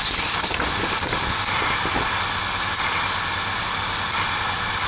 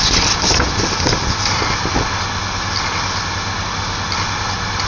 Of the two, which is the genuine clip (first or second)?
second